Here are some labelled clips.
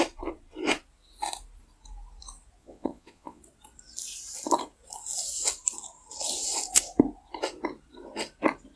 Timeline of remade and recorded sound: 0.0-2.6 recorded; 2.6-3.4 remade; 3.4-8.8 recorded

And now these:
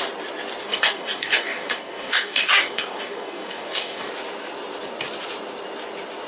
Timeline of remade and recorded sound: 0.0-0.6 recorded; 0.6-4.1 remade; 4.1-6.3 recorded

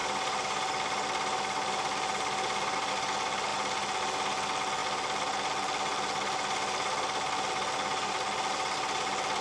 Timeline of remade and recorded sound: 0.0-2.9 remade; 2.9-9.4 recorded

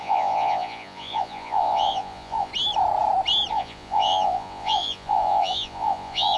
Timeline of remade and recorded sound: 0.0-2.5 remade; 2.5-3.5 recorded; 3.5-6.4 remade

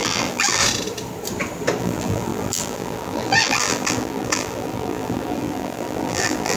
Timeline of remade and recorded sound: 0.0-0.6 remade; 0.6-1.8 recorded; 1.8-6.6 remade

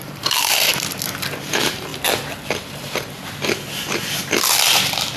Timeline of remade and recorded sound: 0.0-0.7 remade; 0.7-1.4 recorded; 1.4-1.9 remade; 1.9-5.2 recorded

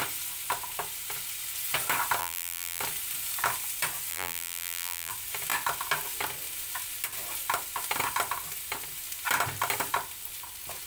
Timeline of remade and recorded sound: 0.0-2.2 recorded; 2.2-2.8 remade; 2.8-4.1 recorded; 4.1-5.1 remade; 5.1-10.9 recorded

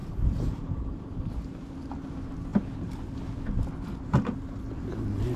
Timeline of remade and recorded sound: 0.0-0.8 remade; 0.8-5.4 recorded